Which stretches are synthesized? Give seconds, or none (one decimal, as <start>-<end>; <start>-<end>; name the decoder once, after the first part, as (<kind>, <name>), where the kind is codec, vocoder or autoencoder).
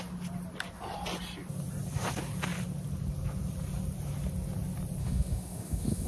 5.0-6.1 (autoencoder, DAC-VAE)